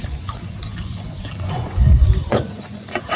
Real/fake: fake